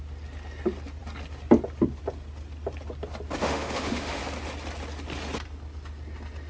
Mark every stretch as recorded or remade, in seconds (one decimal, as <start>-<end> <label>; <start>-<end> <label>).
0.0-3.4 recorded; 3.4-4.2 remade; 4.2-6.5 recorded